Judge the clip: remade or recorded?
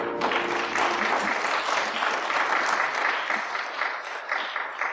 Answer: recorded